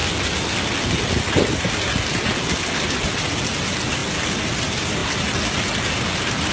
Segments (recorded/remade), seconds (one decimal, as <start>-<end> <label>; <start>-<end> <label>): 0.0-6.5 recorded